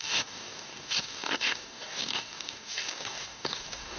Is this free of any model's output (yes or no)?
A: no